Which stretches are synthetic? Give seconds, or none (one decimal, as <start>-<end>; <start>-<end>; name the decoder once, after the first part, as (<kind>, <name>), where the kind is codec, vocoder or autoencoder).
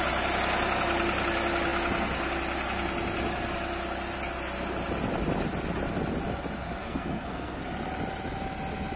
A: 6.8-7.6 (codec, SNAC)